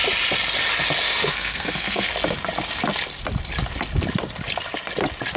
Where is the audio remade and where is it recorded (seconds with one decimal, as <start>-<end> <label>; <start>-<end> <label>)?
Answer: 0.0-1.3 recorded; 1.3-2.1 remade; 2.1-5.4 recorded